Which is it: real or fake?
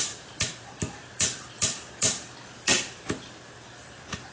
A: real